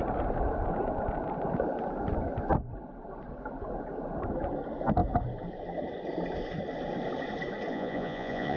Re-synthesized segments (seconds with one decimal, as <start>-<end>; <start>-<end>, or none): 7.7-8.6